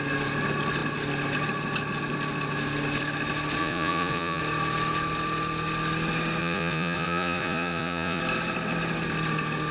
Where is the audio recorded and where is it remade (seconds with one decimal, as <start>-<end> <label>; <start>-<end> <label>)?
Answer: 0.0-3.6 recorded; 3.6-4.4 remade; 4.4-6.4 recorded; 6.4-8.2 remade; 8.2-9.7 recorded